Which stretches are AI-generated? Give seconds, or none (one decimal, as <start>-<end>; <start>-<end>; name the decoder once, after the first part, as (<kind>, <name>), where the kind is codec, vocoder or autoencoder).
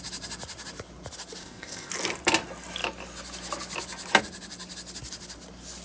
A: 1.4-1.9 (codec, ZipCodec)